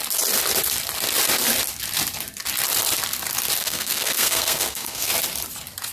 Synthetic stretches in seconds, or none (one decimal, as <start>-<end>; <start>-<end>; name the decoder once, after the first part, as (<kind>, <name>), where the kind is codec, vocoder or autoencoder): 3.6-5.1 (codec, SNAC)